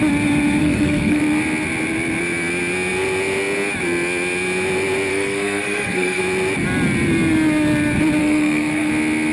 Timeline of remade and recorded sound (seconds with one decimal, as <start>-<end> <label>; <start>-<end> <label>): 0.0-0.6 recorded; 0.6-1.2 remade; 1.2-5.1 recorded; 5.1-6.2 remade; 6.2-8.2 recorded; 8.2-8.9 remade; 8.9-9.3 recorded